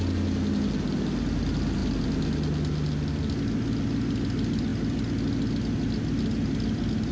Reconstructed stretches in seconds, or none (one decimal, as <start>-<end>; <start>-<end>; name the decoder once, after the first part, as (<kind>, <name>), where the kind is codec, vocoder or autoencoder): none